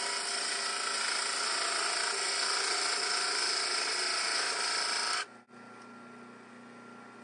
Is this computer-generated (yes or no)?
no